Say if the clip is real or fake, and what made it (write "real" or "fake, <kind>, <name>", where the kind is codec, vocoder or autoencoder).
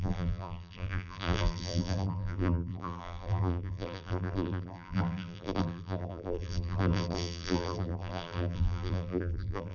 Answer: fake, vocoder, BigVGAN v2